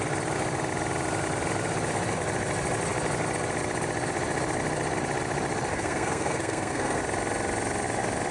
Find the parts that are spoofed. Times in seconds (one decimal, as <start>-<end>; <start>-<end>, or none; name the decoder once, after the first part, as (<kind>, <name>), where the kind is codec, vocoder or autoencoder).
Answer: 5.7-7.0 (codec, SNAC)